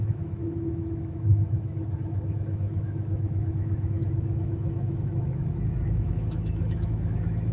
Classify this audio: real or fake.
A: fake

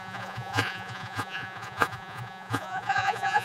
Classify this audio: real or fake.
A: fake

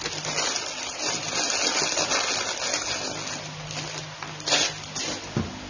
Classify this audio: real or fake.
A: real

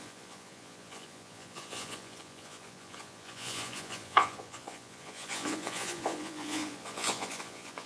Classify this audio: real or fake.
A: fake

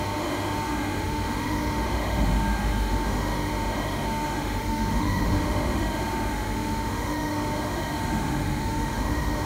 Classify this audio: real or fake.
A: fake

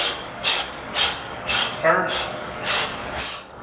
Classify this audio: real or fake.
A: fake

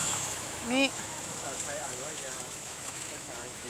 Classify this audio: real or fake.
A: fake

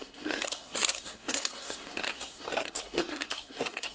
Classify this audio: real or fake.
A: fake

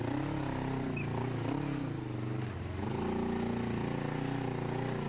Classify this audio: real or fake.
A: real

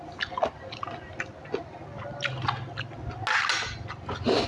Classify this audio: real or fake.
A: real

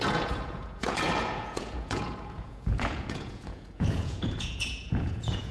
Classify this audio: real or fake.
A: fake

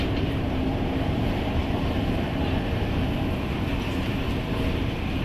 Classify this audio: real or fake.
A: fake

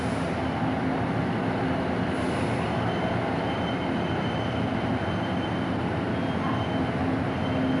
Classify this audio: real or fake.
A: real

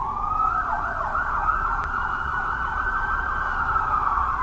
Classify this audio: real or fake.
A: fake